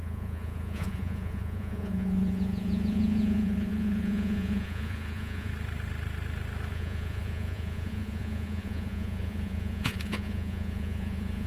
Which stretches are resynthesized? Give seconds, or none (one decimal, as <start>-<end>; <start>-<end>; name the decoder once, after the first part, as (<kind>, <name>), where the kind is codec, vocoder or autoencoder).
0.0-5.5 (vocoder, Vocos); 6.7-11.5